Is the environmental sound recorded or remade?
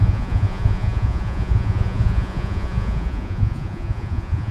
remade